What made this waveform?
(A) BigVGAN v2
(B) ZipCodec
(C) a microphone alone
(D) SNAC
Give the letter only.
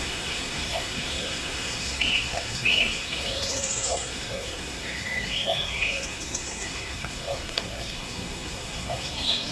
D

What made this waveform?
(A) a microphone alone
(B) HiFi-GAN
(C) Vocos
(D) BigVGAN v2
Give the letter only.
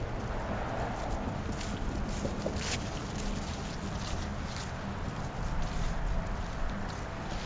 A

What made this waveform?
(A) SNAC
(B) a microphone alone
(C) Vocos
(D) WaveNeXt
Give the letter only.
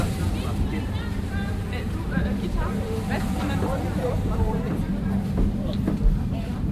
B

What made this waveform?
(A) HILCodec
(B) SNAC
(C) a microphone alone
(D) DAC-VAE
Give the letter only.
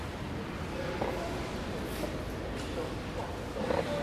C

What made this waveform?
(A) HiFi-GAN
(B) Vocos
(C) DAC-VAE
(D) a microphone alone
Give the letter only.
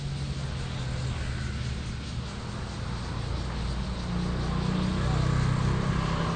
D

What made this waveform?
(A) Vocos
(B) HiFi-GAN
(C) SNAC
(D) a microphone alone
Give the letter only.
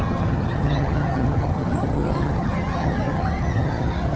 B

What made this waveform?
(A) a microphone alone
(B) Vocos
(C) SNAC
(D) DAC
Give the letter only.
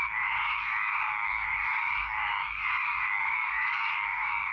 D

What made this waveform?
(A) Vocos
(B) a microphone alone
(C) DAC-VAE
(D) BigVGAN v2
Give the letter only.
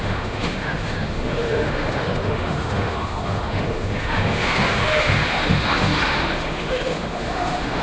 C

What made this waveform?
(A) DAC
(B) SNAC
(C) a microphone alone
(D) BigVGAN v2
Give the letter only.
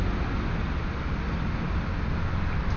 C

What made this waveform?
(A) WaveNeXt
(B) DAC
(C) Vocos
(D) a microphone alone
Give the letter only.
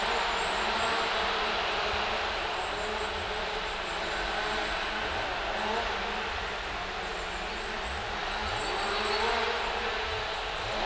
D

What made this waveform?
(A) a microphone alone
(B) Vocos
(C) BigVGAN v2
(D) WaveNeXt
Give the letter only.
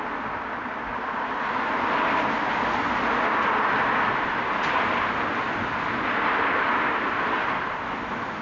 A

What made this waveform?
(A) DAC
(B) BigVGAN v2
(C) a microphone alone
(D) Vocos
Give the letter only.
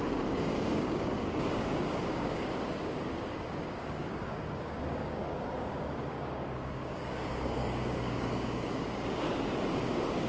A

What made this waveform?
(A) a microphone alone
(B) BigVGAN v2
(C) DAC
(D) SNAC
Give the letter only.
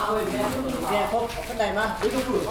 A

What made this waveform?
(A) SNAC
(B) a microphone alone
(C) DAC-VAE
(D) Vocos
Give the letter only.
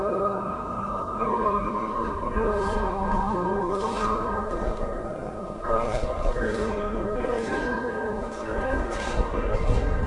A